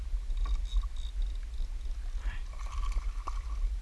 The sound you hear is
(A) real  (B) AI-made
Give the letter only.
A